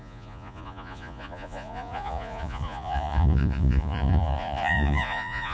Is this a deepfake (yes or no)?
yes